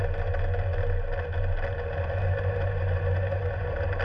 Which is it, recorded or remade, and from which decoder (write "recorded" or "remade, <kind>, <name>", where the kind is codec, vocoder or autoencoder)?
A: recorded